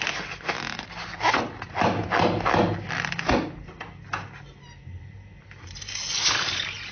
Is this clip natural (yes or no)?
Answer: yes